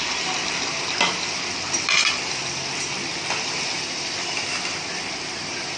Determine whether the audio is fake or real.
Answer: real